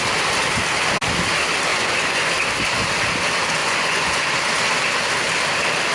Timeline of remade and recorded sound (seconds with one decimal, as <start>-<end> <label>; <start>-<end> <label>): 0.0-1.7 recorded; 1.7-2.3 remade; 2.3-3.6 recorded; 3.6-4.3 remade; 4.3-5.9 recorded

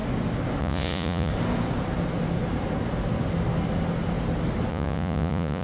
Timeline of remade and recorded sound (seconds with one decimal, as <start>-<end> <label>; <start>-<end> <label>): 0.0-0.6 recorded; 0.6-1.3 remade; 1.3-4.7 recorded; 4.7-5.6 remade

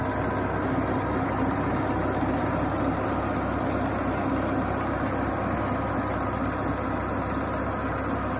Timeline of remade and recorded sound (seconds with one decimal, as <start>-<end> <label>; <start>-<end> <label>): 0.0-8.4 recorded

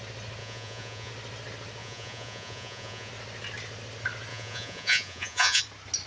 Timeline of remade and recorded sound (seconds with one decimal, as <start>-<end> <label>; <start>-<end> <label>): 0.0-0.4 recorded; 0.4-1.1 remade; 1.1-1.8 recorded; 1.8-3.1 remade; 3.1-4.3 recorded; 4.3-5.6 remade; 5.6-6.1 recorded